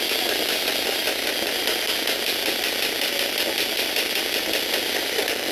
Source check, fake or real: real